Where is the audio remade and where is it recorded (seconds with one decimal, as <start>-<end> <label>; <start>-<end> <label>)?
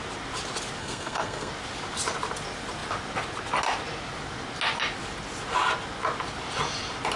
0.0-0.8 recorded; 0.8-1.5 remade; 1.5-7.2 recorded